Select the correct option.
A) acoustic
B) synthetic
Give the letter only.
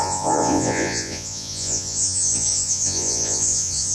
B